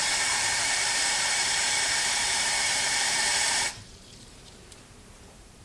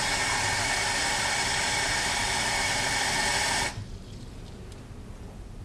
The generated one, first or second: first